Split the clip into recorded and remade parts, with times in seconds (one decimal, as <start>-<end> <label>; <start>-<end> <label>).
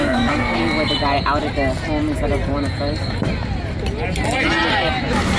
0.0-0.6 remade; 0.6-5.4 recorded